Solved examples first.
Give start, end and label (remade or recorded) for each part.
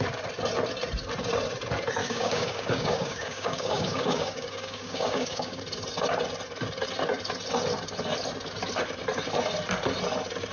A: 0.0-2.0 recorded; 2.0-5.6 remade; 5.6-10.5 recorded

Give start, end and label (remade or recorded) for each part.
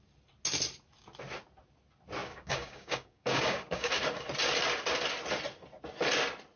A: 0.0-2.2 recorded; 2.2-3.9 remade; 3.9-6.6 recorded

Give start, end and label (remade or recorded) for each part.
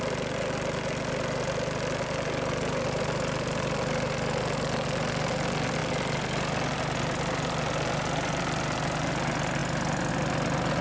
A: 0.0-10.8 recorded